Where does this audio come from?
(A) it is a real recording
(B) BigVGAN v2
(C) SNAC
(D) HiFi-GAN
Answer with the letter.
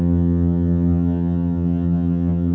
D